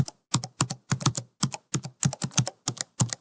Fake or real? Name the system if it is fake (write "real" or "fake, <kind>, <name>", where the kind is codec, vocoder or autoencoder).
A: real